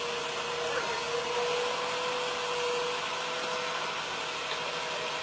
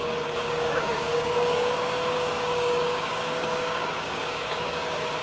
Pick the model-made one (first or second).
second